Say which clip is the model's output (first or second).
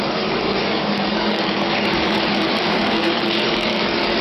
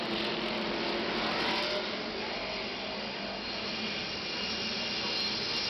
first